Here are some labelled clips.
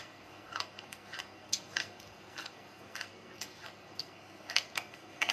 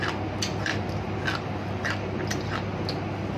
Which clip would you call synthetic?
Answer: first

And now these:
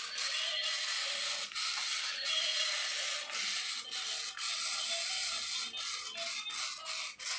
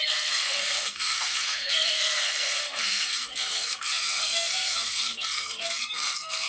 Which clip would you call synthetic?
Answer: second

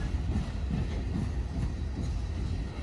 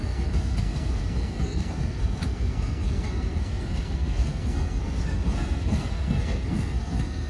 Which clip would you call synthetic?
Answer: second